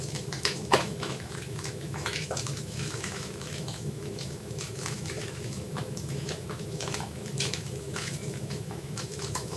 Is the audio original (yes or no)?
no